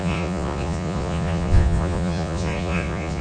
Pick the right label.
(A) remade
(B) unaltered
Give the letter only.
A